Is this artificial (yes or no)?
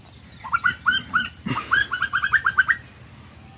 no